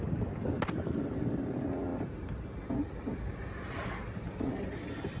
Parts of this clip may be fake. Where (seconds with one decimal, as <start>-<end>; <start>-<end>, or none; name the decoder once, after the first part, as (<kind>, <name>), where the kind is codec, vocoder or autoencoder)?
none